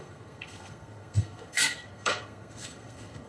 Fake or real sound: fake